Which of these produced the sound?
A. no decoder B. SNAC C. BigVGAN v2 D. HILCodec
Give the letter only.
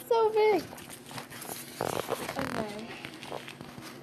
A